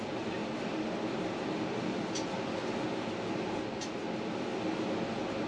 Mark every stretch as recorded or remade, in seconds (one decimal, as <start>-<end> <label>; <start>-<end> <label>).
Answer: 0.0-5.5 recorded